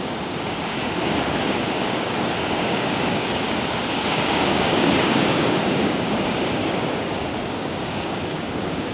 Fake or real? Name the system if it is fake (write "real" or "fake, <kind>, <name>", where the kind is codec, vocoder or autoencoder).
fake, codec, DAC